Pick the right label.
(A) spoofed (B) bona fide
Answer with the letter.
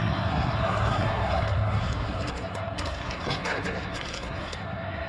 A